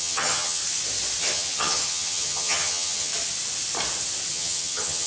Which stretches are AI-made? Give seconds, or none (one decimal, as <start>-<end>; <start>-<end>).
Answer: 0.0-0.6; 1.2-3.1; 4.3-5.1